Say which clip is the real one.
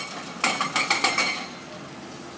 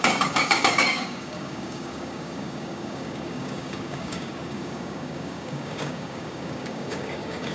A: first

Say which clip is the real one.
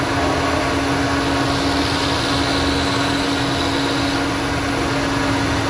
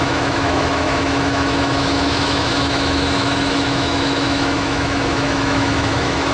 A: first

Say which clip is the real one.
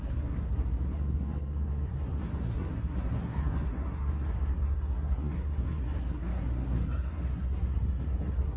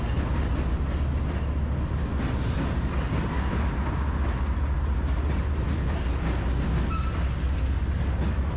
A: second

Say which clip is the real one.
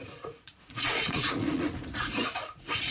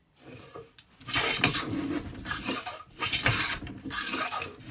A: second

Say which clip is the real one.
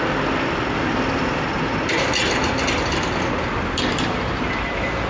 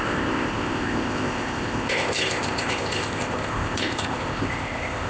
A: first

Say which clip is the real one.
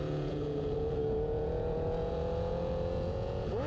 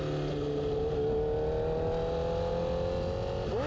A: second